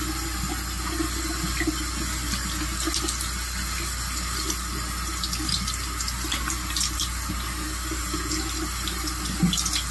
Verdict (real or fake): real